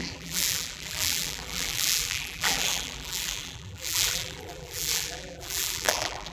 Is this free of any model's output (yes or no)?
no